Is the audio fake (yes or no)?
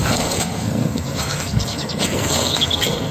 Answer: yes